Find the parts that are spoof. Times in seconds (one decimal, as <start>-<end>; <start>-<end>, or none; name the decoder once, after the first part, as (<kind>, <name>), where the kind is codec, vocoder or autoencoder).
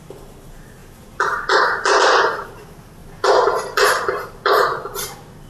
none